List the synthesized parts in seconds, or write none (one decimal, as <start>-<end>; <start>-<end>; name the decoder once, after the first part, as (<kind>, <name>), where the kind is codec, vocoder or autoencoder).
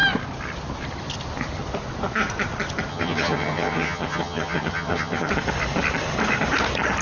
2.9-5.3 (vocoder, HiFi-GAN)